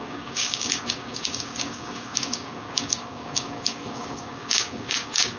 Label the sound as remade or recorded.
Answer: remade